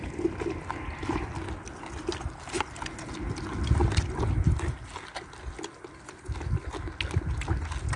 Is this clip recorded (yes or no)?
yes